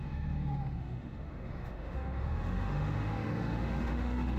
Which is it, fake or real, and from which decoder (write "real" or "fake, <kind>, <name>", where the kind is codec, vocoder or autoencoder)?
fake, autoencoder, DAC-VAE